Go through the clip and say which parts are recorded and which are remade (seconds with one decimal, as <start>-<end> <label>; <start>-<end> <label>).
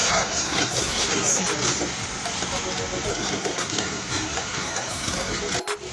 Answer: 0.0-1.4 remade; 1.4-3.1 recorded; 3.1-5.4 remade; 5.4-5.9 recorded